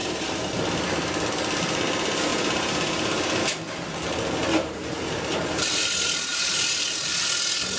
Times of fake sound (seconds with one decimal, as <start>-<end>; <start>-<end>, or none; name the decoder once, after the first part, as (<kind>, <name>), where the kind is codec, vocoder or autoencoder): 0.0-0.5 (vocoder, BigVGAN v2); 2.3-3.4; 4.5-5.8; 6.3-7.1